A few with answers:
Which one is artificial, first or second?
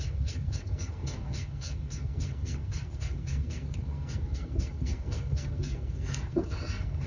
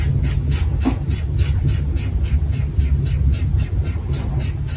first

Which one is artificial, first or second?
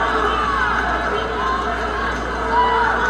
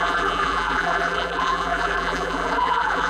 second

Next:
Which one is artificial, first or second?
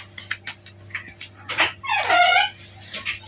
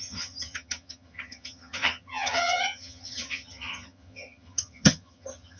second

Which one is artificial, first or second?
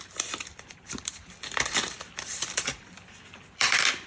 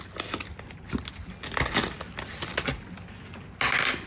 first